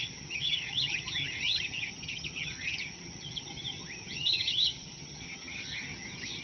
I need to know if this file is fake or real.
fake